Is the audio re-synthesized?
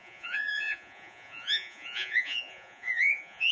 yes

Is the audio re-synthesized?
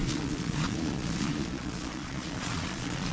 yes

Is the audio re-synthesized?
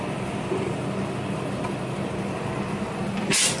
no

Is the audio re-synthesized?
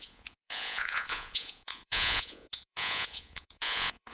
yes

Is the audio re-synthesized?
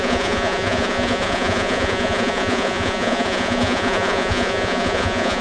yes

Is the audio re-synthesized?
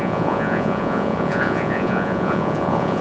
yes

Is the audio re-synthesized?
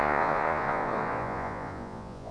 yes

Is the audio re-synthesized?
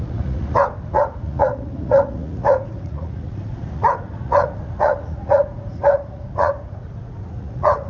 yes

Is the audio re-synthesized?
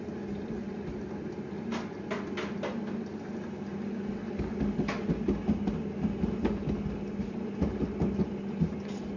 no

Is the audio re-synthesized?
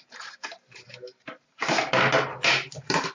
no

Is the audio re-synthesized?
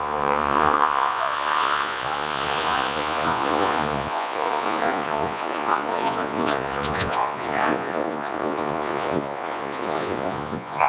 yes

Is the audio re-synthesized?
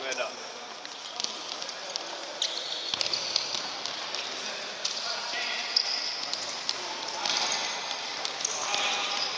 no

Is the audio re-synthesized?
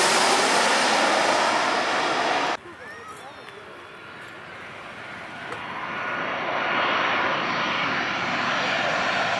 no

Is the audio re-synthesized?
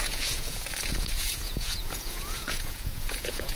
yes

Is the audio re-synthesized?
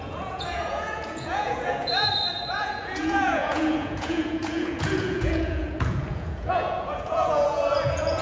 yes